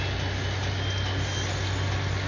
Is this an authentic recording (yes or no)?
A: yes